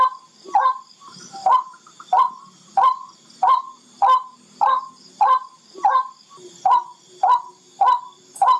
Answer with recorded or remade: recorded